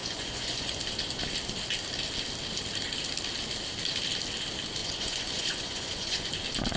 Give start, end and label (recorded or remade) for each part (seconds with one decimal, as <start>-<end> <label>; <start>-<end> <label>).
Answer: 0.0-0.8 remade; 0.8-4.8 recorded; 4.8-6.3 remade; 6.3-6.8 recorded